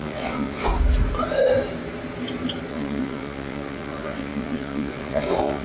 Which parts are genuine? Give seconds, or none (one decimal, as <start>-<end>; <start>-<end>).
0.7-2.7